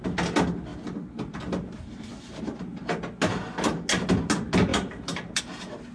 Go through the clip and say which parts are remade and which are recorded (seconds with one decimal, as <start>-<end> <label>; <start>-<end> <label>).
0.0-4.7 recorded; 4.7-5.4 remade; 5.4-5.9 recorded